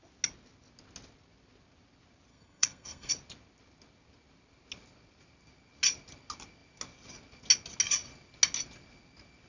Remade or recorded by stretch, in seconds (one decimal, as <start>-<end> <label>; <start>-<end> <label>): 0.0-2.3 recorded; 2.3-3.1 remade; 3.1-9.5 recorded